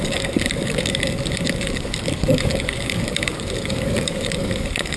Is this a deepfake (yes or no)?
yes